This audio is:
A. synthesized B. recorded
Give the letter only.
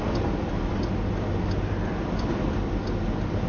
B